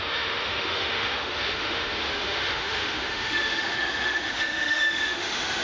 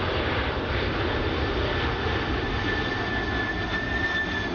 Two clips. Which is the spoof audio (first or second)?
first